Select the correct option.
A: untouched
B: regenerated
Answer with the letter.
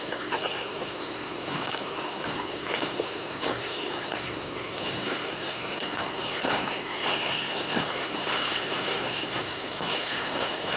B